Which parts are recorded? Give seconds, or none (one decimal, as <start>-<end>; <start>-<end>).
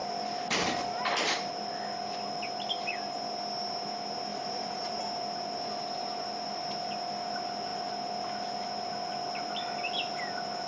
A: 1.5-4.3; 5.0-10.7